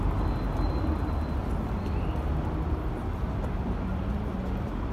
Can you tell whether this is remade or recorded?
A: recorded